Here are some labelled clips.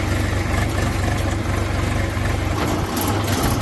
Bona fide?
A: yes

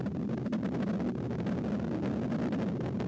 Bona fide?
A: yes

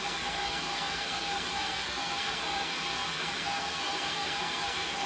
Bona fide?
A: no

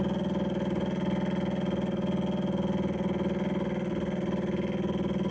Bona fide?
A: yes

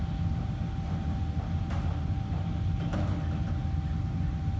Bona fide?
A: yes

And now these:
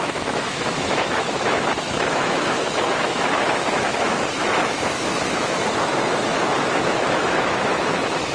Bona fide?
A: no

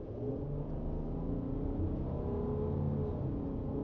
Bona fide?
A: yes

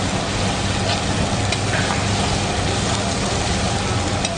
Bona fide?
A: yes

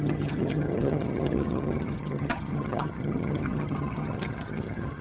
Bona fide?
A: no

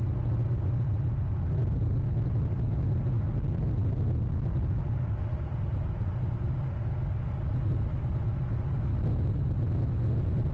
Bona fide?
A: yes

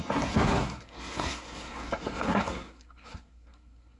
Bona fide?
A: no